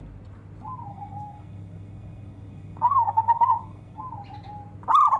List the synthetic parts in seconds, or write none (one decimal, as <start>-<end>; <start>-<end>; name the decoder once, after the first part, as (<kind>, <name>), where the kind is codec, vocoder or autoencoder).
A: 0.9-4.0 (codec, SNAC)